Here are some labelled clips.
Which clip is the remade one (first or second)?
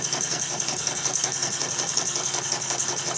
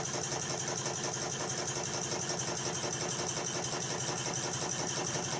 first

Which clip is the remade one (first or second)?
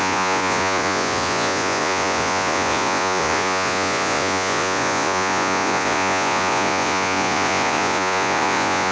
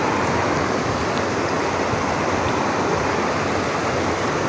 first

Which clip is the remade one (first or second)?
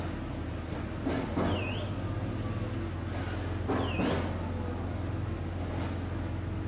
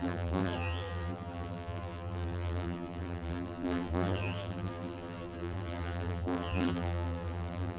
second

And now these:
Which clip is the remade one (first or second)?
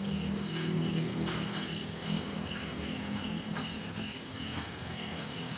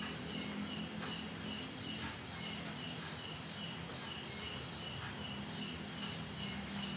first